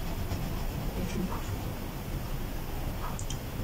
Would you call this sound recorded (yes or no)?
yes